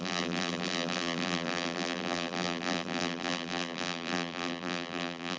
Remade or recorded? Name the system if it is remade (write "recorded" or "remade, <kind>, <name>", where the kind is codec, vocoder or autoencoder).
remade, vocoder, BigVGAN v2